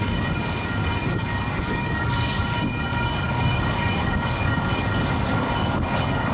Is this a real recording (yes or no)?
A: no